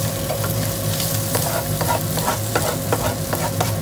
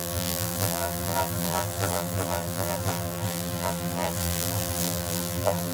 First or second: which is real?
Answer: first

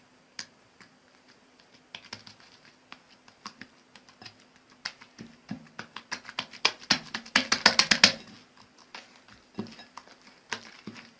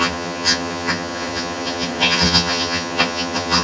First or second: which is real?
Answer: first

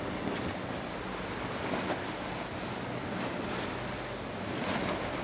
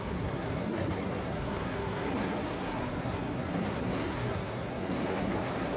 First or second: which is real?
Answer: first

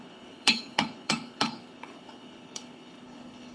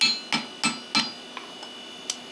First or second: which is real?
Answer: second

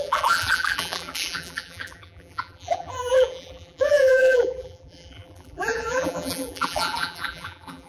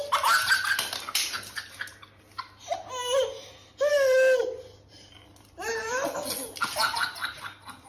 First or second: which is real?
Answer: second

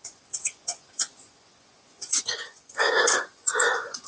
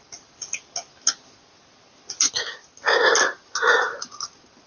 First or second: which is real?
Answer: second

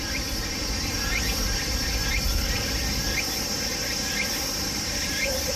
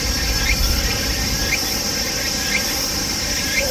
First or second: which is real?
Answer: first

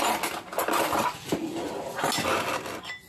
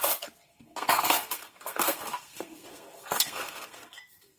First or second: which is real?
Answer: first